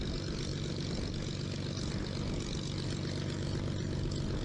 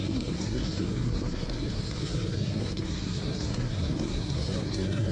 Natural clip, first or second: first